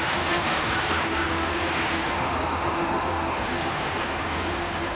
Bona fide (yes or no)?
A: no